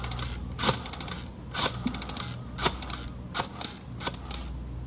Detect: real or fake real